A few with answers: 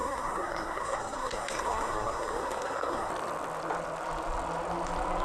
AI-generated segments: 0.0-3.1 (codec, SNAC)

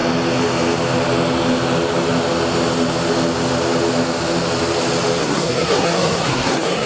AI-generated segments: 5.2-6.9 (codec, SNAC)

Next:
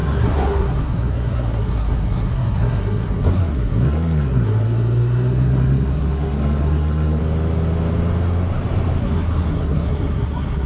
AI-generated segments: 0.0-7.2 (codec, SNAC); 9.0-10.7

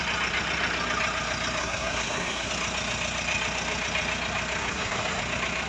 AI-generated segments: 1.6-2.5 (codec, SNAC); 4.6-5.2